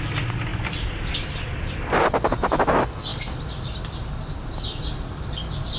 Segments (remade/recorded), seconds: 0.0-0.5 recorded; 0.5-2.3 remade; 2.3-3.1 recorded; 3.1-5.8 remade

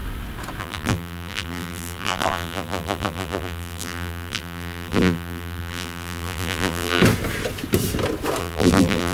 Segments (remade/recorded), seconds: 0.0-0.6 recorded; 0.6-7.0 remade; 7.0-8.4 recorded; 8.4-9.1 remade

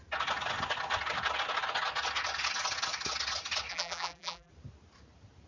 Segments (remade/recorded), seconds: 0.0-3.7 recorded; 3.7-4.5 remade; 4.5-5.5 recorded